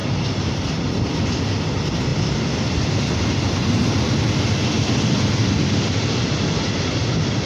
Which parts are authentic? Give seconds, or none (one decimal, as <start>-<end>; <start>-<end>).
0.0-7.5